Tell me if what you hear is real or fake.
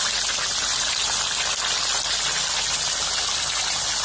real